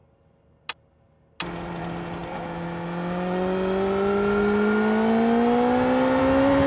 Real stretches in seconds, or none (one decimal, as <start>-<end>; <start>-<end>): 0.0-6.7